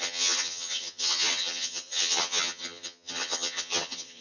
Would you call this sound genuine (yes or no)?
no